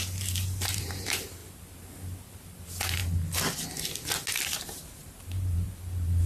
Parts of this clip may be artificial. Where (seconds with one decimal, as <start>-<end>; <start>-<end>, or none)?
0.0-1.4; 2.5-3.0; 4.3-6.3